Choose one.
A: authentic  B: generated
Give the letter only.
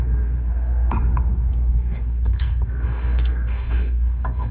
B